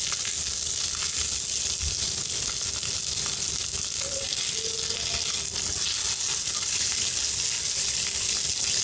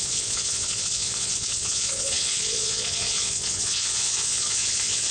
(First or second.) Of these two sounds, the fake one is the second